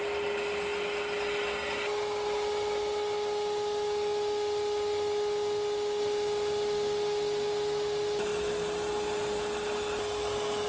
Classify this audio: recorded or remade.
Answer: recorded